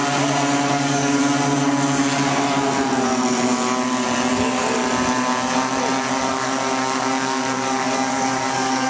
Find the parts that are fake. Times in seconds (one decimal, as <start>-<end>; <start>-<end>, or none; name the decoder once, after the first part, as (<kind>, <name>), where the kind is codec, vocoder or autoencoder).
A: 0.7-1.2 (codec, DAC); 4.3-4.8; 6.3-8.9